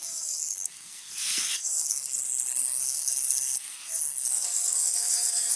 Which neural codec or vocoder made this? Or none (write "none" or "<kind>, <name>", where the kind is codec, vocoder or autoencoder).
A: codec, SNAC